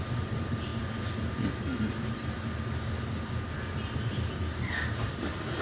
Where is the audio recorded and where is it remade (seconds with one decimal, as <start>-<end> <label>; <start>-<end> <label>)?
0.0-5.6 recorded